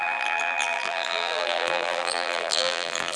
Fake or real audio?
fake